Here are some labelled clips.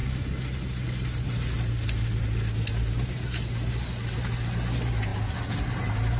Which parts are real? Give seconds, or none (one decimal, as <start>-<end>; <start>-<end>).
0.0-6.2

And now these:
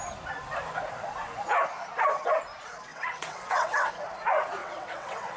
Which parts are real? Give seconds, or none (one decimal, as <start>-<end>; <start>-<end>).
0.0-2.9; 3.9-4.6

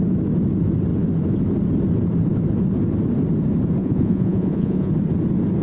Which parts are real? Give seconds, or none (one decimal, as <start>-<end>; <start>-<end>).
0.0-3.8; 4.9-5.6

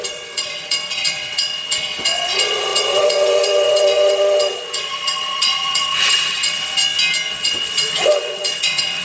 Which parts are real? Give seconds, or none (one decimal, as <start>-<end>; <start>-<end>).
6.8-7.3

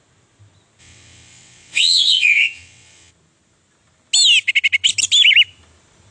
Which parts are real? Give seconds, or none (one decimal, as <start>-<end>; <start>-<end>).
0.0-0.8; 3.1-6.1

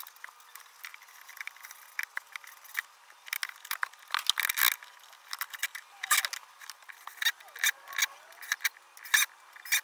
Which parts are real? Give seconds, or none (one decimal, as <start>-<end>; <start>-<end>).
0.0-9.8

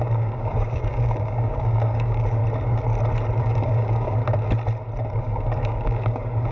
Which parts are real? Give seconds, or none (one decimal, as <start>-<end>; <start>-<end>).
2.4-3.4; 4.2-5.2

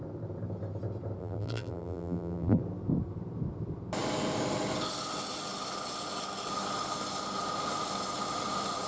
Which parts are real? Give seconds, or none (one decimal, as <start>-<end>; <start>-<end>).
0.0-1.2; 2.6-8.9